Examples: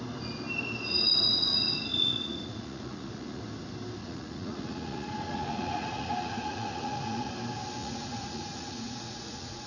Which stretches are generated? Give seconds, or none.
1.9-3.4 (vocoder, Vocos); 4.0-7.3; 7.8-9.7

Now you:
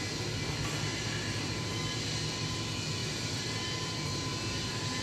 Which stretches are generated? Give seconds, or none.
0.9-1.7 (vocoder, BigVGAN v2); 3.0-5.0

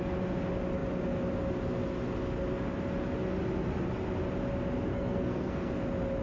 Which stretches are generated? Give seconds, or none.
4.9-5.7 (codec, SNAC)